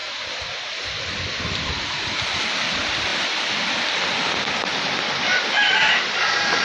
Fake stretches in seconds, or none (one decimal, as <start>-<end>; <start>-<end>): 3.1-5.4